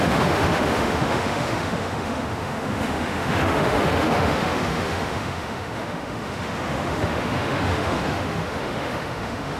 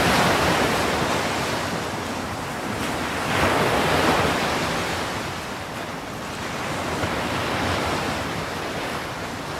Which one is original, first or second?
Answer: second